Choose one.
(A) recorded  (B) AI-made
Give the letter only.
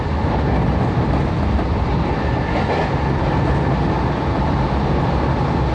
A